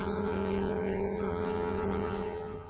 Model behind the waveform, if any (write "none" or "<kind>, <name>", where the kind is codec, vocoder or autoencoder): vocoder, HiFi-GAN